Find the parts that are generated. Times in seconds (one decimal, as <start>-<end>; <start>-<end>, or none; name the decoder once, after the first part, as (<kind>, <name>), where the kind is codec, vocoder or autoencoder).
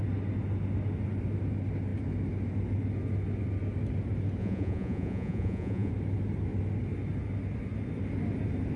4.4-5.9 (vocoder, Vocos)